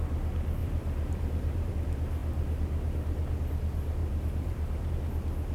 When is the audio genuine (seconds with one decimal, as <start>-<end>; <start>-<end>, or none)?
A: 0.0-0.6; 1.7-4.0; 4.9-5.5